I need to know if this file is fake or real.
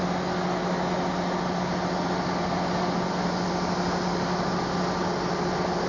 real